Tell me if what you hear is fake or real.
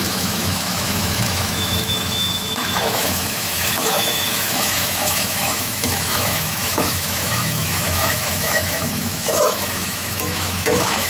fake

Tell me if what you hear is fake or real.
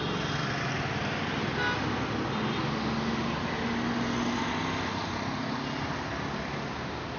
real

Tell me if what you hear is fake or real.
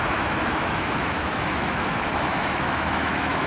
fake